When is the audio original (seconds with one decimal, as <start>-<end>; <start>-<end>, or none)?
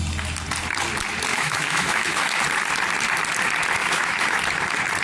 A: 0.0-1.3; 2.4-3.8; 4.4-5.0